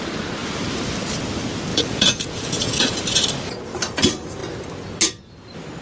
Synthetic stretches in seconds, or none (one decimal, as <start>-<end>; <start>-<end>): 1.7-3.0